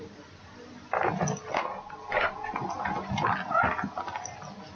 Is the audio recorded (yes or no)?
yes